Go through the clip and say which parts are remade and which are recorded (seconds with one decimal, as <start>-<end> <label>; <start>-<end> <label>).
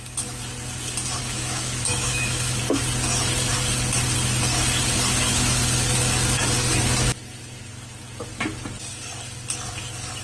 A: 0.0-1.2 recorded; 1.2-2.6 remade; 2.6-10.2 recorded